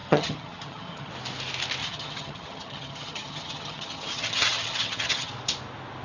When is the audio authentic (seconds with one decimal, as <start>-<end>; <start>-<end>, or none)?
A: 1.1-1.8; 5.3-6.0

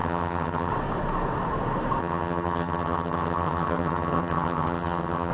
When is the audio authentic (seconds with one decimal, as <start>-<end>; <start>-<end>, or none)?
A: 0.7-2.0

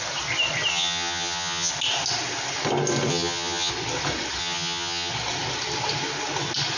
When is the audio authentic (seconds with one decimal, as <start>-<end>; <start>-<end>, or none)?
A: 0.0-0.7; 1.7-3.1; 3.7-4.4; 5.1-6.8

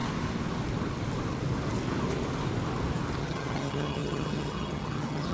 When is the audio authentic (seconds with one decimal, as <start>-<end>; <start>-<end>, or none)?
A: 0.0-3.2

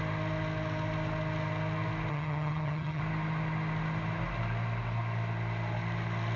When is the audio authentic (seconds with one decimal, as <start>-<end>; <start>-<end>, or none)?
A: 0.0-2.1; 3.0-6.4